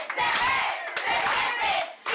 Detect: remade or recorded remade